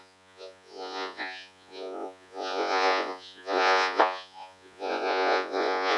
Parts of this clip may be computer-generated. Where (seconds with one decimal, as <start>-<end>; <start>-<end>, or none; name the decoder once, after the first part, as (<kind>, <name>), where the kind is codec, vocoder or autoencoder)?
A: 0.0-6.0 (vocoder, Vocos)